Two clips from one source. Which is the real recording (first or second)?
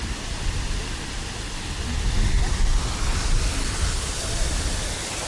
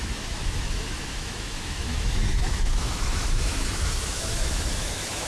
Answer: first